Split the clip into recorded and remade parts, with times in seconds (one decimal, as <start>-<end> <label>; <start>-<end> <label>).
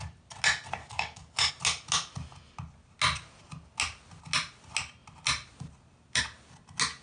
0.0-0.8 recorded; 0.8-1.5 remade; 1.5-7.0 recorded